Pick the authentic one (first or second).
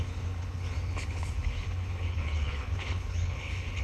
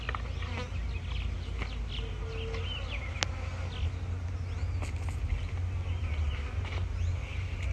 second